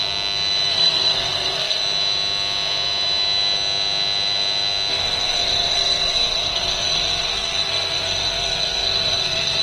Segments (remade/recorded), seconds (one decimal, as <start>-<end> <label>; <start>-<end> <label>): 0.0-0.7 recorded; 0.7-1.8 remade; 1.8-4.9 recorded; 4.9-9.6 remade